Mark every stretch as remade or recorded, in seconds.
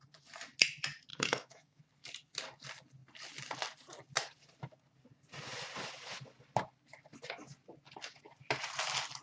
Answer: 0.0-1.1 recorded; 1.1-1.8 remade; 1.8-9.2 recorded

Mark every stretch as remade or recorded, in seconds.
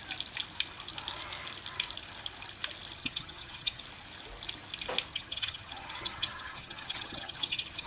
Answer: 0.0-3.0 recorded; 3.0-3.8 remade; 3.8-5.1 recorded; 5.1-7.9 remade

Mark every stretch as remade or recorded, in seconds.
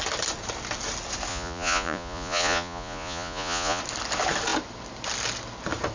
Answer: 0.0-1.3 recorded; 1.3-3.8 remade; 3.8-5.9 recorded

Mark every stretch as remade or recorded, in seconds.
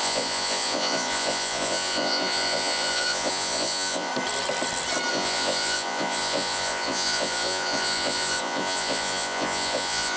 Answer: 0.0-4.1 remade; 4.1-5.1 recorded; 5.1-10.2 remade